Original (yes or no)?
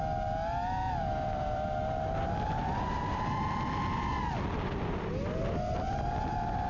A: yes